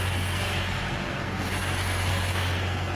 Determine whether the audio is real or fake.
fake